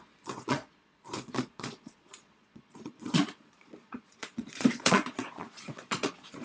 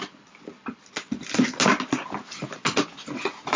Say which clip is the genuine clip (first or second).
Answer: second